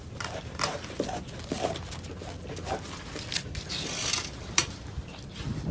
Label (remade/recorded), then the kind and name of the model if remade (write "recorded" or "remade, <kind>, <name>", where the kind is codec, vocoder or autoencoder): recorded